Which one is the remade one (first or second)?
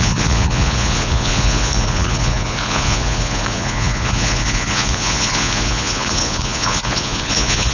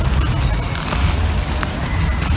first